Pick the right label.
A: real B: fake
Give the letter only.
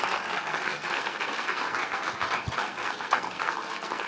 B